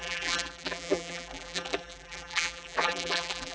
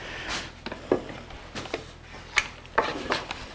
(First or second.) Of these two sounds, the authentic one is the second